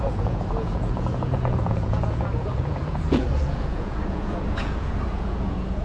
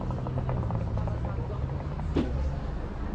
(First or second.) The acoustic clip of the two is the second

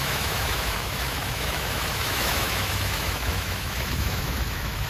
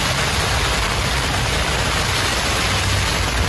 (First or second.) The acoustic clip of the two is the second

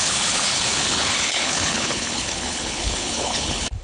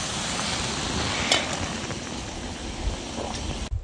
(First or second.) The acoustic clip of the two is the second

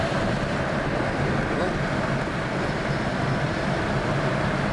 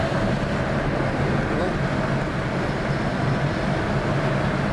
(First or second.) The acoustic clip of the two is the second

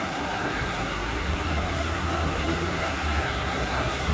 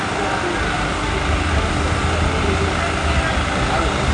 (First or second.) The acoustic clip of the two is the second